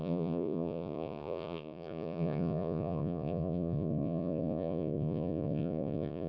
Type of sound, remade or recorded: remade